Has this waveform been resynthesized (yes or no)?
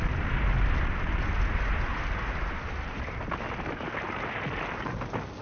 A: no